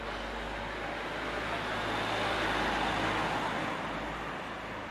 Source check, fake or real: real